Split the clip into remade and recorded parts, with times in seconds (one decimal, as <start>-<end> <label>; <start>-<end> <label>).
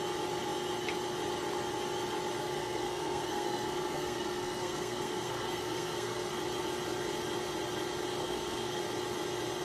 0.0-2.4 recorded; 2.4-6.3 remade; 6.3-8.2 recorded; 8.2-8.8 remade; 8.8-9.6 recorded